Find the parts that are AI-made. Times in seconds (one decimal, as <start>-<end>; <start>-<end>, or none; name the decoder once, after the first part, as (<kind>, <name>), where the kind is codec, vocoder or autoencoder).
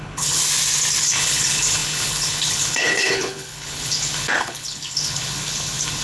0.0-0.4 (codec, HILCodec); 1.0-6.0